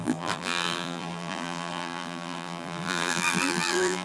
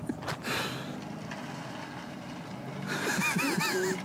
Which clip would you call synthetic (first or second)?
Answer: first